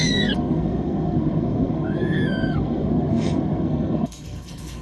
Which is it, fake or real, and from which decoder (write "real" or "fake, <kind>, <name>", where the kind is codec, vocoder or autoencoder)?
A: fake, codec, SNAC